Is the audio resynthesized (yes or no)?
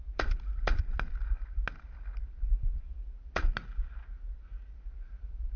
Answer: no